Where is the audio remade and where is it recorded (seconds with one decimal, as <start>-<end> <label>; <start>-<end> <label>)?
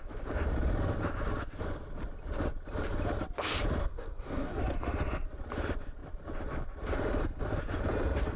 0.0-3.8 recorded; 3.8-4.6 remade; 4.6-8.4 recorded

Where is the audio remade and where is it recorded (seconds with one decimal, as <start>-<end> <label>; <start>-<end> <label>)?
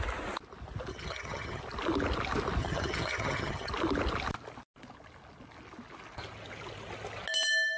0.0-0.9 recorded; 0.9-1.6 remade; 1.6-2.6 recorded; 2.6-3.7 remade; 3.7-7.8 recorded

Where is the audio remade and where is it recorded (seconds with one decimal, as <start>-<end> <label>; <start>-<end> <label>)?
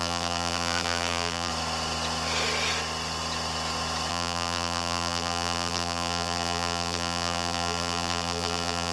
0.0-1.5 remade; 1.5-4.1 recorded; 4.1-8.9 remade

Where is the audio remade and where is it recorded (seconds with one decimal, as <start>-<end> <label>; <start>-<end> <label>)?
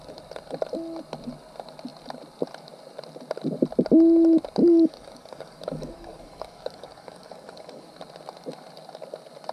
0.0-4.6 recorded; 4.6-7.9 remade; 7.9-9.5 recorded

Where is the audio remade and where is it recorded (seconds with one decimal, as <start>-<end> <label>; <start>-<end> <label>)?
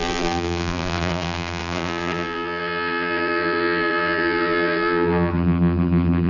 0.0-6.3 remade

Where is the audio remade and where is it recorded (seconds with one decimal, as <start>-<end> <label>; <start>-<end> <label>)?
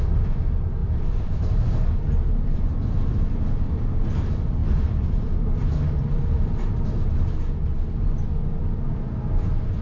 0.0-9.8 recorded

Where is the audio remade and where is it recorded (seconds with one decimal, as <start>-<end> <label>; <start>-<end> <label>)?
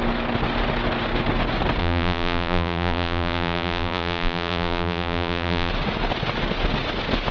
0.0-1.8 recorded; 1.8-5.7 remade; 5.7-7.3 recorded